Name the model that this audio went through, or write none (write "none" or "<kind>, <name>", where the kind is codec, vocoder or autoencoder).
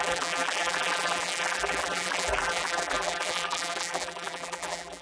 vocoder, BigVGAN v2